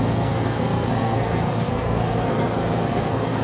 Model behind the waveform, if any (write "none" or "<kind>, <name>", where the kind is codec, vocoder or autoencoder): codec, SNAC